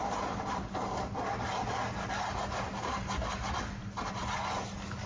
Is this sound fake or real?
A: real